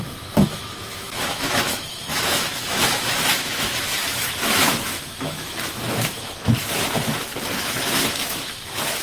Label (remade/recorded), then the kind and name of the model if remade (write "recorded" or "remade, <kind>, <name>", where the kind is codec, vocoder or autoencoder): remade, autoencoder, DAC-VAE